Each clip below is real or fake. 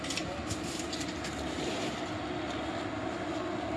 real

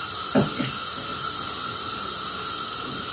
real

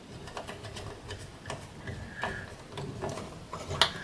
real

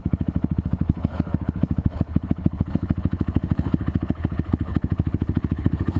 fake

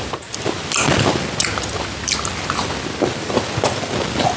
real